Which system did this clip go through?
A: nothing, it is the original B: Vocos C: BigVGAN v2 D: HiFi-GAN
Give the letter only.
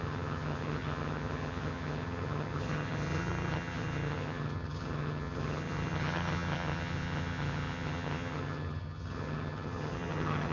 D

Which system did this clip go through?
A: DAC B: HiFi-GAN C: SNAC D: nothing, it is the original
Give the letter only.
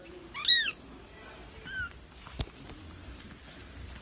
D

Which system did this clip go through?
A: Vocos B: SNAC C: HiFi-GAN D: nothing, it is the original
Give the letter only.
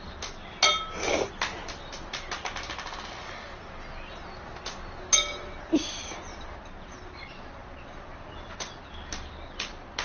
D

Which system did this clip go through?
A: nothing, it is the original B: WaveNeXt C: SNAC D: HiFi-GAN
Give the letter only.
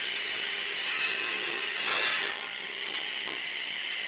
D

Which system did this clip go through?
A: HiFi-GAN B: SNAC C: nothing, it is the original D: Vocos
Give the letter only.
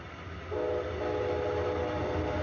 C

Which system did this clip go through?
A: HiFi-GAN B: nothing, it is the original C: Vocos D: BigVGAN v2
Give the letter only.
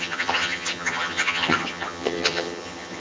A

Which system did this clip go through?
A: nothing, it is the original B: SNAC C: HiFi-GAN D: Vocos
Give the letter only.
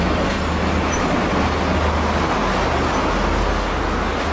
A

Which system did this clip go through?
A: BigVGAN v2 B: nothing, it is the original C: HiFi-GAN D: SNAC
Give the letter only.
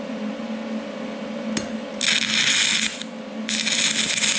B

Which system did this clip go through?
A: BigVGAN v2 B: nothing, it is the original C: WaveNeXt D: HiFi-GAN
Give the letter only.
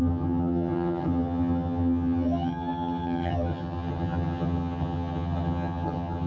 D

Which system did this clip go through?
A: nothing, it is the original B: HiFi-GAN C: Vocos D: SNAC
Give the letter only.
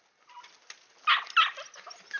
A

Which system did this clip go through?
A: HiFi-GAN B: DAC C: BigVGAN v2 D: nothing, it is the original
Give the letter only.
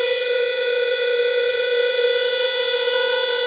A